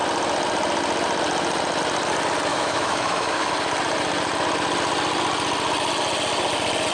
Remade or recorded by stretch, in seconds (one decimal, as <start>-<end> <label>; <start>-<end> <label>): 0.0-2.5 recorded; 2.5-3.5 remade; 3.5-6.9 recorded

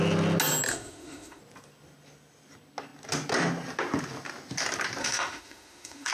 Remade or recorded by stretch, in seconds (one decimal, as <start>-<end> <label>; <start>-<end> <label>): 0.0-0.7 recorded; 0.7-1.4 remade; 1.4-5.0 recorded; 5.0-6.1 remade

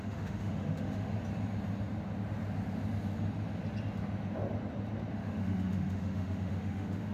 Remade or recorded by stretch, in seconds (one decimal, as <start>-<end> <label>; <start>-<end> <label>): 0.0-1.1 remade; 1.1-5.1 recorded; 5.1-7.1 remade

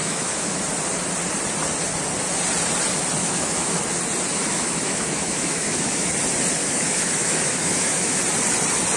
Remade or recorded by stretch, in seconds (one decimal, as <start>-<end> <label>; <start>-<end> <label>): 0.0-0.6 remade; 0.6-3.2 recorded; 3.2-3.8 remade; 3.8-4.3 recorded; 4.3-6.1 remade; 6.1-6.6 recorded; 6.6-8.2 remade; 8.2-9.0 recorded

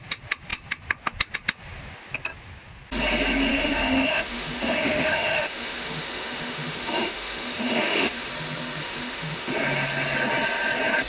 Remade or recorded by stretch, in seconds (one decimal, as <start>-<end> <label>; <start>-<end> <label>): 0.0-3.5 recorded; 3.5-8.3 remade; 8.3-8.8 recorded; 8.8-9.5 remade; 9.5-11.1 recorded

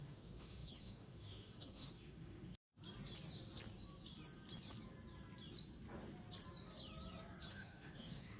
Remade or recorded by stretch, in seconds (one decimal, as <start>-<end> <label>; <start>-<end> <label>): 0.0-2.7 remade; 2.7-7.5 recorded; 7.5-8.4 remade

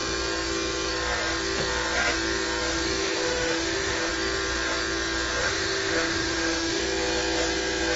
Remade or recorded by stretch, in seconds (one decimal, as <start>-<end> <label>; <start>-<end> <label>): 0.0-3.0 recorded; 3.0-4.1 remade; 4.1-5.4 recorded; 5.4-6.8 remade; 6.8-8.0 recorded

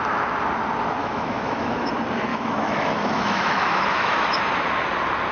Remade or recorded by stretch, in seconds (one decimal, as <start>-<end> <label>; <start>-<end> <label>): 0.0-1.0 recorded; 1.0-1.9 remade; 1.9-2.3 recorded; 2.3-4.4 remade; 4.4-5.3 recorded